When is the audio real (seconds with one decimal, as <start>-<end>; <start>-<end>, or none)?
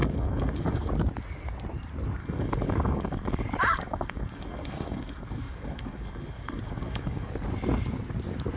0.9-2.2; 7.3-8.6